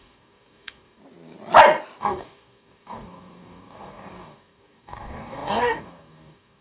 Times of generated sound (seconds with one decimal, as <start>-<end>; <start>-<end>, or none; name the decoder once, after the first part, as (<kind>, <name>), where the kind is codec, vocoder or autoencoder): 0.0-1.0 (codec, DAC); 2.0-6.6

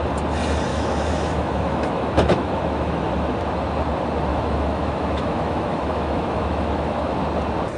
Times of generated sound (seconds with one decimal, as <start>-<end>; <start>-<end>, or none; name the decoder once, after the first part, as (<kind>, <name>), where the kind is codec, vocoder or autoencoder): 0.7-3.1 (autoencoder, DAC-VAE); 4.3-7.2

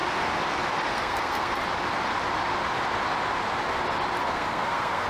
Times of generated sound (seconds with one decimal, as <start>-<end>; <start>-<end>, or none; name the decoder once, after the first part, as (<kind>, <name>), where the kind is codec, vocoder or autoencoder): 0.9-1.6 (codec, SNAC); 4.2-5.1

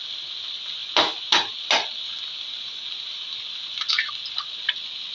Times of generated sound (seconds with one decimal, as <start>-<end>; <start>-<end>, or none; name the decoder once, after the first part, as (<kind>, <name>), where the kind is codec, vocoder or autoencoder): none

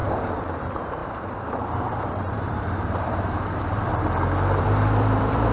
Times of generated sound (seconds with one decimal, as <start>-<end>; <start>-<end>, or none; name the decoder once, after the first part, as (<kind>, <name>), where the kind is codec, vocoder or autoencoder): 0.0-3.9 (vocoder, BigVGAN v2); 4.6-5.5

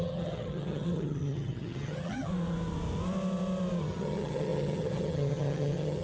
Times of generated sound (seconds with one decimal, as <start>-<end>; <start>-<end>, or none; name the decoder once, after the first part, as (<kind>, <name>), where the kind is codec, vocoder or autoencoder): 0.0-2.3 (vocoder, HiFi-GAN); 3.8-6.0

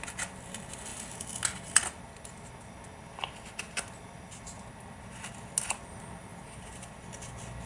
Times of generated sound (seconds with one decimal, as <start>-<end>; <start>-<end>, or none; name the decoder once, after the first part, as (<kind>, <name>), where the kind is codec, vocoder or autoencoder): 6.3-6.9 (vocoder, BigVGAN v2)

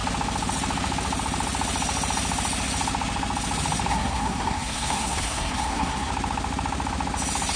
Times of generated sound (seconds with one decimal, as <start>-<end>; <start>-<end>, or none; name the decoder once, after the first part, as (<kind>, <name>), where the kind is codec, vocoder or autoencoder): 3.9-6.1 (codec, SNAC)